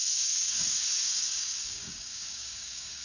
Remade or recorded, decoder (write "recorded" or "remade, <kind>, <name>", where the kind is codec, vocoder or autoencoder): remade, codec, DAC